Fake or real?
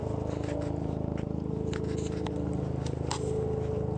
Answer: real